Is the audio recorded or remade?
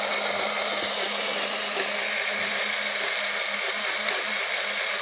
recorded